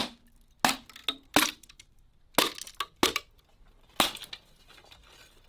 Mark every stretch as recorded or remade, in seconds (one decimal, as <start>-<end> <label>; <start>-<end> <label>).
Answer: 0.0-5.5 recorded